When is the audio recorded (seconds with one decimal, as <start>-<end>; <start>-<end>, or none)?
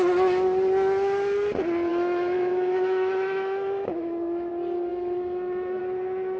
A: 0.0-1.9; 4.5-4.9; 5.8-6.4